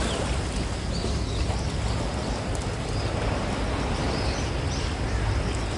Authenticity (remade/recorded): recorded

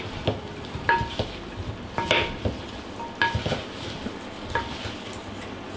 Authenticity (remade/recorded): recorded